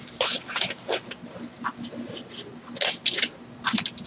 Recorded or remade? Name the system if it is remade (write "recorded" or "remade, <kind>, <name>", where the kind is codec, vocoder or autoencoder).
recorded